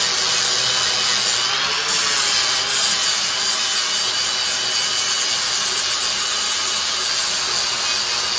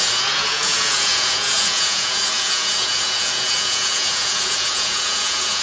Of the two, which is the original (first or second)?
first